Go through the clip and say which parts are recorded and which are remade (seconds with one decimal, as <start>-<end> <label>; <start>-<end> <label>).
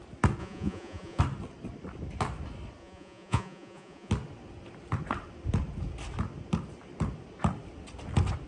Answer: 0.0-0.4 recorded; 0.4-1.2 remade; 1.2-2.8 recorded; 2.8-4.1 remade; 4.1-8.5 recorded